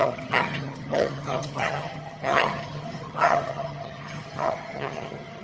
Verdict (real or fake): fake